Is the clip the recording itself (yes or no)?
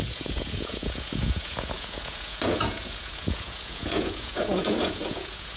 no